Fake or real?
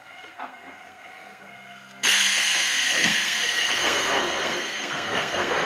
fake